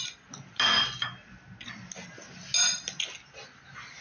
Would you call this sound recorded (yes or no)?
yes